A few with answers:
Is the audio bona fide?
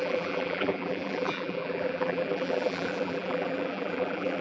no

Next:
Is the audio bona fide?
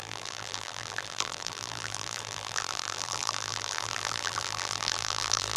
no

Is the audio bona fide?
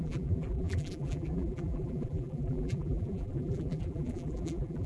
no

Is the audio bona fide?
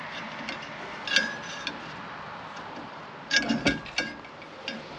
yes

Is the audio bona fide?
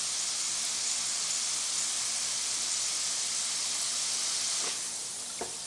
yes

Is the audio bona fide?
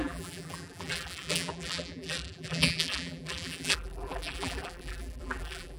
no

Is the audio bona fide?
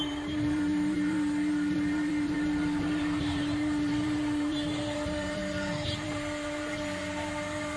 no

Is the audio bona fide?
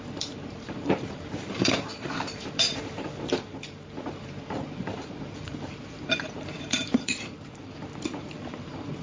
no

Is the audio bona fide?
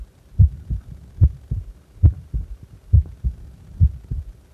yes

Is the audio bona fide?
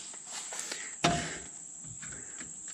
yes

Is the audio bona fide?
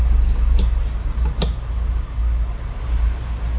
yes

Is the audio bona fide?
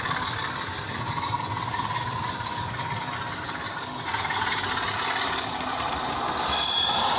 no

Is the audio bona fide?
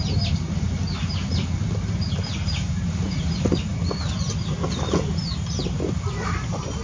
yes